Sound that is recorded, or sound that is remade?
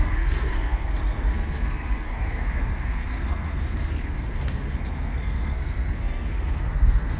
remade